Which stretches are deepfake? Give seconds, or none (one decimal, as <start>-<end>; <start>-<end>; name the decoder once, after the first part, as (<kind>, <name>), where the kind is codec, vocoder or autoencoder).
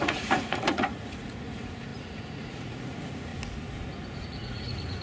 0.0-3.3 (vocoder, Vocos); 4.2-5.0